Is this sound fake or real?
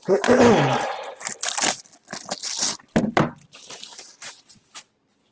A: real